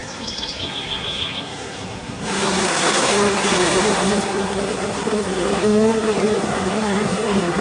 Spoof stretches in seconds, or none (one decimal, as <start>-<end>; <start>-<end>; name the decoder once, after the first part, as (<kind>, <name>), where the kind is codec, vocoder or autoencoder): 0.0-7.6 (codec, SNAC)